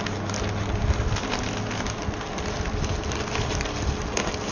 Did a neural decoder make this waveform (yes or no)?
no